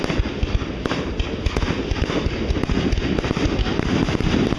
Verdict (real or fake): real